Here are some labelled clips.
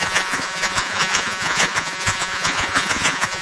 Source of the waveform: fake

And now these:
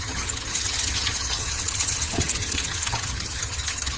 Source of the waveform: fake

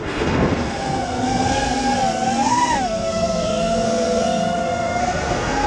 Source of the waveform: fake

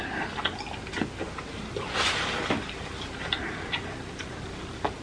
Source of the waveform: real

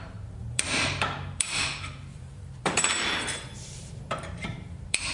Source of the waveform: fake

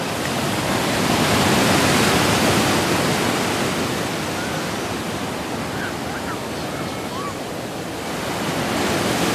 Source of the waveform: real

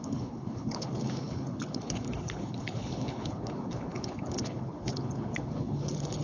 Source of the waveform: fake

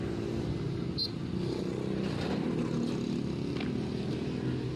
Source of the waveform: real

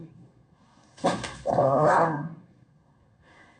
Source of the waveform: fake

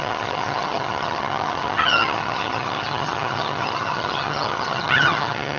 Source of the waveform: fake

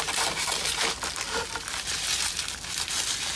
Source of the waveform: real